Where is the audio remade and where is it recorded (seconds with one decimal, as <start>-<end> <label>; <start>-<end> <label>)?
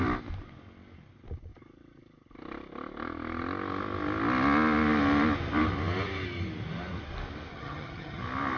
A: 0.0-7.5 recorded; 7.5-8.2 remade; 8.2-8.6 recorded